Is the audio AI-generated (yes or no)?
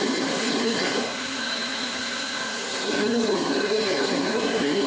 yes